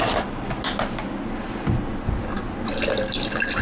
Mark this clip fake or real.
real